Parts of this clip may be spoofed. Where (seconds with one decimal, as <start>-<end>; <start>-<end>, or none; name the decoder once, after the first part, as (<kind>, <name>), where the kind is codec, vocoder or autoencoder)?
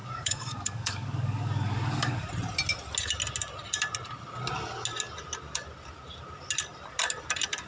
0.0-2.3 (codec, DAC)